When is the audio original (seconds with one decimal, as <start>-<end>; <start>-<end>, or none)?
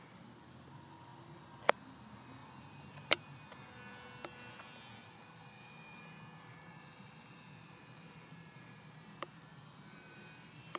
0.0-2.4; 3.2-5.0; 6.0-6.7